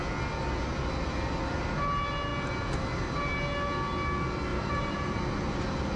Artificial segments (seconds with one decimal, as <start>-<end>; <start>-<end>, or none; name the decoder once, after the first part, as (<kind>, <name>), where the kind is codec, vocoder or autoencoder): 4.5-5.2 (vocoder, BigVGAN v2)